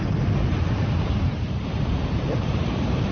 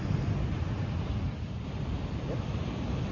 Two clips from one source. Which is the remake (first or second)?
first